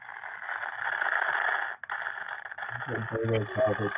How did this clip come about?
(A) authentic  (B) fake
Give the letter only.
A